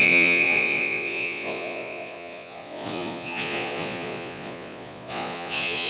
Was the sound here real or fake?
fake